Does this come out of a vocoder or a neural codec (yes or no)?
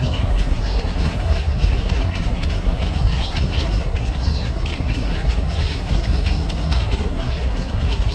yes